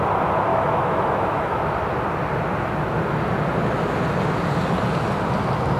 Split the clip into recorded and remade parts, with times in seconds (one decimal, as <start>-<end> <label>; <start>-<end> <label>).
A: 0.0-0.5 recorded; 0.5-1.6 remade; 1.6-5.8 recorded